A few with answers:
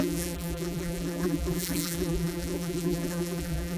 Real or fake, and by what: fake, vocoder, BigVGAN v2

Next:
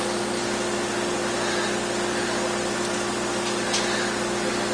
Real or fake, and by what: real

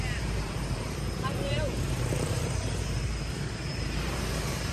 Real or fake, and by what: fake, vocoder, BigVGAN v2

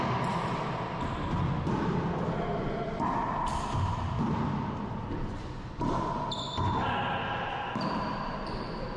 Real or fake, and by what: real